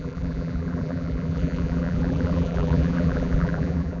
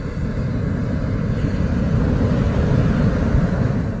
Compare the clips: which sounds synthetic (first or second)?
first